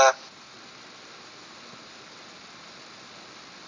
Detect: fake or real real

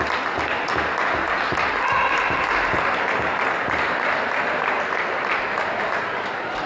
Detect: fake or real real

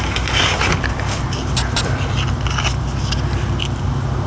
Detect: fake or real real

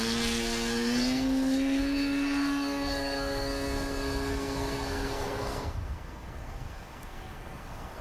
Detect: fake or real fake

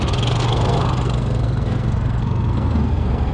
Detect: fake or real fake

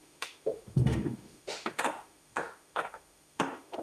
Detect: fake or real fake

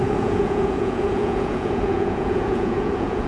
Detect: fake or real fake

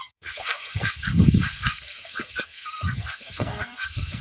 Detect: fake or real fake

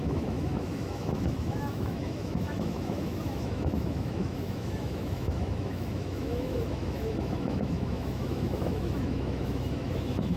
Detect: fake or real fake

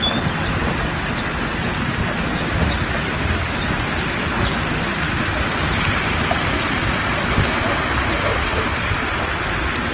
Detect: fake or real real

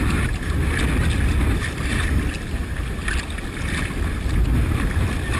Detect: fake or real real